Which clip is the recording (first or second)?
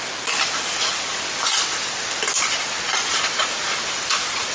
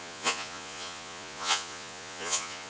first